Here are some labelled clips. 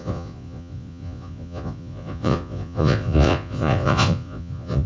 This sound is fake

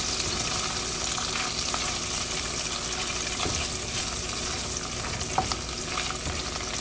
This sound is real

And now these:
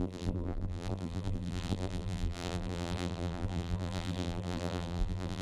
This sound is fake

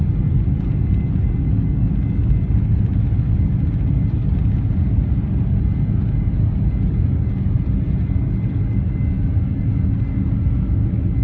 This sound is real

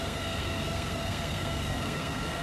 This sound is fake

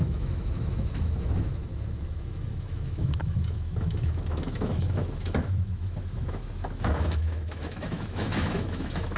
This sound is fake